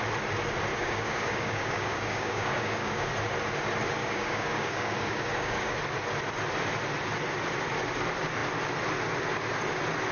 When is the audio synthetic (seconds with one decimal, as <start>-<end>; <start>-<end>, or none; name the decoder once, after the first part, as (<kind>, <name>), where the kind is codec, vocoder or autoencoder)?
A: 0.7-3.1 (codec, DAC); 4.0-5.8